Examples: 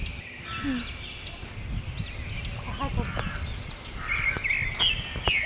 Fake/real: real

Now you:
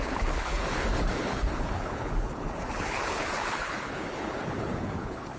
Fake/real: fake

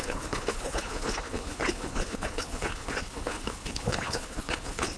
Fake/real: fake